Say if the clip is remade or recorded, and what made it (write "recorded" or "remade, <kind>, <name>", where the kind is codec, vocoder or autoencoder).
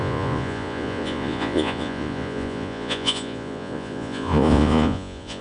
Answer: remade, vocoder, Vocos